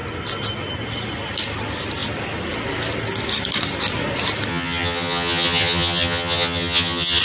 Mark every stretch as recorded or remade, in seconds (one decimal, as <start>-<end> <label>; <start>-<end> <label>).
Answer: 0.0-4.5 recorded; 4.5-7.2 remade